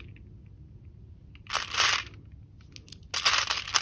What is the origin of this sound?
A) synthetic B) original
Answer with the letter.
B